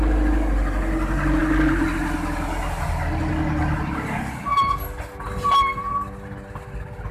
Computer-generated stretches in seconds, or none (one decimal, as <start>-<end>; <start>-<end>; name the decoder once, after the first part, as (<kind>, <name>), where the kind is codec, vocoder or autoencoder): none